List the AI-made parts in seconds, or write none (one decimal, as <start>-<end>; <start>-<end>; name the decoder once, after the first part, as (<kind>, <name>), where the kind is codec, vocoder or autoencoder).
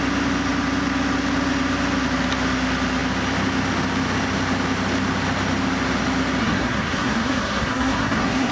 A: 6.4-8.5 (codec, SNAC)